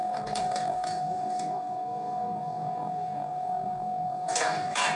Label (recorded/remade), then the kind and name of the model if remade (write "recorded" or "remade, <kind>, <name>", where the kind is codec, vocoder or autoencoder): remade, codec, DAC